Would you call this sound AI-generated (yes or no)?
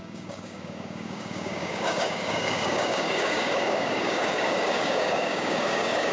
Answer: yes